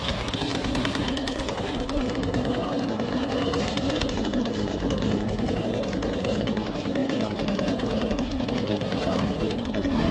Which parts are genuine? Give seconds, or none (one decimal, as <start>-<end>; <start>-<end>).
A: none

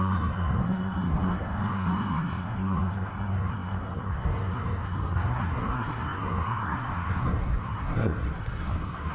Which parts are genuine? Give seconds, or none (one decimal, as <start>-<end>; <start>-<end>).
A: none

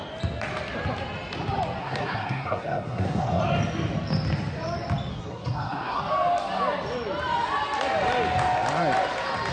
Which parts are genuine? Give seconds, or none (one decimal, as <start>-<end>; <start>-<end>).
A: 0.0-1.8; 3.4-5.1; 6.0-9.5

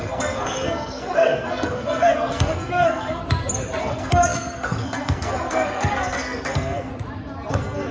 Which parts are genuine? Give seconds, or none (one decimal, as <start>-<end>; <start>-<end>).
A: 3.2-3.8; 6.9-7.5